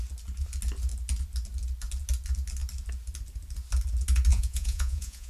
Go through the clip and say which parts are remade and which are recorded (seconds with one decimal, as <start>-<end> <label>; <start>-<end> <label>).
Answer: 0.0-4.3 recorded; 4.3-5.3 remade